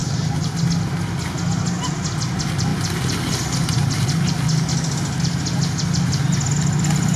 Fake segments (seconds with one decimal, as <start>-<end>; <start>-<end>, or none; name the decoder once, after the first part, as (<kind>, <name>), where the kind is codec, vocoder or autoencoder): 0.0-0.5 (vocoder, BigVGAN v2)